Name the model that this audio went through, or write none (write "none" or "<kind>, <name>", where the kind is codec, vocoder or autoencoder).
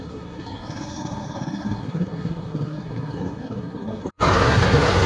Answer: codec, SNAC